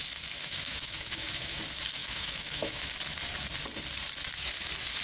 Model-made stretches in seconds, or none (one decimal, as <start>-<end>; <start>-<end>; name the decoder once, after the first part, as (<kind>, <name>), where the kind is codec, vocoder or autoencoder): 0.4-1.6 (autoencoder, DAC-VAE); 2.0-2.9